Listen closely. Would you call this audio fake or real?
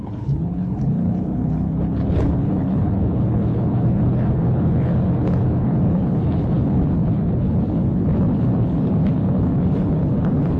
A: fake